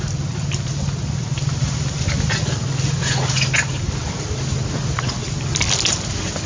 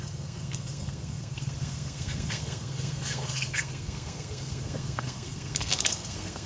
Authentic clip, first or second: first